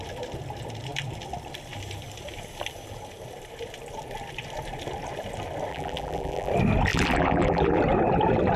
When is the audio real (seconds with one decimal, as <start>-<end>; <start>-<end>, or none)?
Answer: 0.0-5.7; 6.5-6.9; 7.8-8.6